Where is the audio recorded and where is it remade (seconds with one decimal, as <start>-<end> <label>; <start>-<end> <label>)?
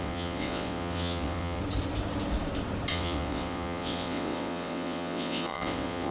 0.0-1.6 remade; 1.6-2.9 recorded; 2.9-6.1 remade